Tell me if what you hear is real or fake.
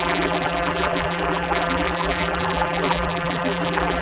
fake